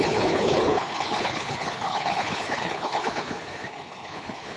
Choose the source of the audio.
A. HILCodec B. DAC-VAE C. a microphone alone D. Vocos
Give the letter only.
A